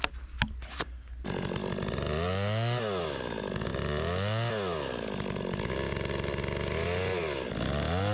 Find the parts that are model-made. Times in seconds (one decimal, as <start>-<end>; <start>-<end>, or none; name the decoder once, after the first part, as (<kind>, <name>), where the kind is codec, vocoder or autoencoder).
none